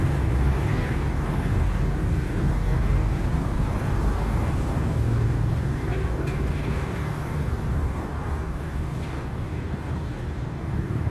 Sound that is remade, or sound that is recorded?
remade